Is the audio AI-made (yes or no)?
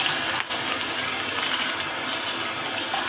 no